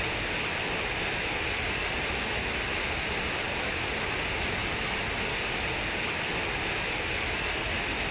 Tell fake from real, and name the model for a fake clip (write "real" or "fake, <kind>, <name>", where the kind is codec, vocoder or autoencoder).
real